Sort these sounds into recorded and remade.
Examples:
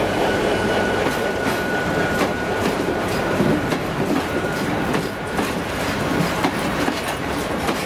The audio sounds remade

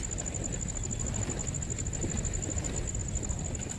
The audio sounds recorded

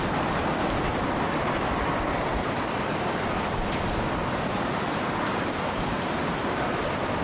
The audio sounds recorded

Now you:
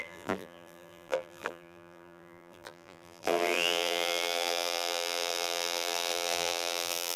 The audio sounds remade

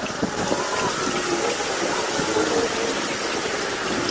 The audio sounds remade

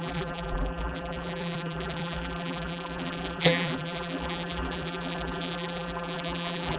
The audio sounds remade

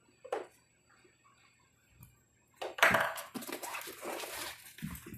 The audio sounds recorded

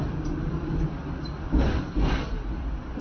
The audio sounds remade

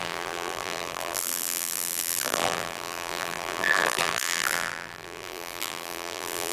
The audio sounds remade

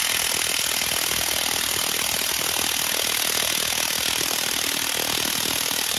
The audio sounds recorded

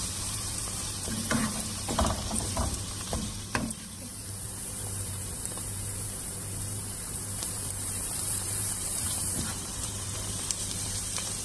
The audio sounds remade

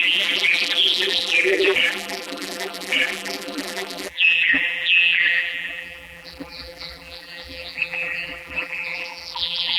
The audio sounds remade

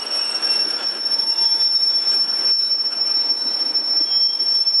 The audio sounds remade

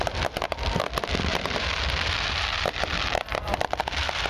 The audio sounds remade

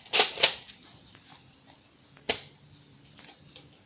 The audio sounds remade